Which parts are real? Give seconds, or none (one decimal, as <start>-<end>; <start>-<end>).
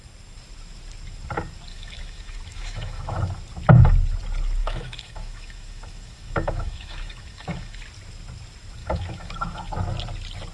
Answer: 0.0-1.7; 3.3-4.6; 7.8-8.8; 9.7-10.5